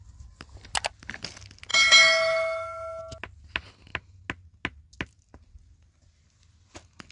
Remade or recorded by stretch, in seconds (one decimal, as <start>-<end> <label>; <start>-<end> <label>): 0.0-1.7 recorded; 1.7-3.0 remade; 3.0-7.1 recorded